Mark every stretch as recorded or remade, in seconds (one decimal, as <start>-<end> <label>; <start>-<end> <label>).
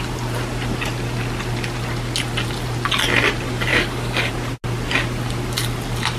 0.0-3.7 recorded; 3.7-4.3 remade; 4.3-6.2 recorded